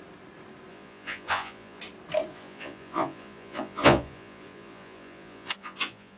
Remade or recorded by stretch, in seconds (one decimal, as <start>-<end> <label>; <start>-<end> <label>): 0.0-0.7 recorded; 0.7-1.8 remade; 1.8-2.3 recorded; 2.3-6.2 remade